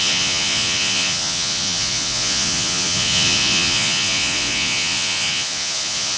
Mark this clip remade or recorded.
remade